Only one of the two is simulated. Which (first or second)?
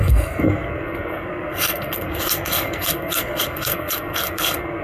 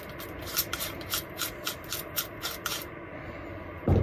first